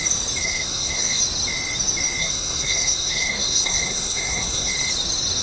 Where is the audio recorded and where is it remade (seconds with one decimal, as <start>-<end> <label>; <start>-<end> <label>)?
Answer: 0.0-0.4 recorded; 0.4-1.2 remade; 1.2-2.2 recorded; 2.2-4.7 remade; 4.7-5.4 recorded